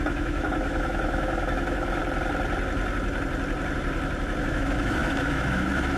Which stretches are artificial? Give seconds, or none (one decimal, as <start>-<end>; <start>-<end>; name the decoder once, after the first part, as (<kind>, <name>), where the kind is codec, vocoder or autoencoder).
0.0-2.0 (autoencoder, DAC-VAE); 4.4-6.0